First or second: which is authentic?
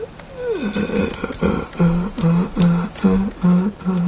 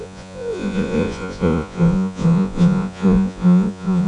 first